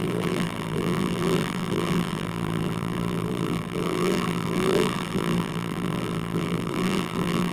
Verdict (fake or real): fake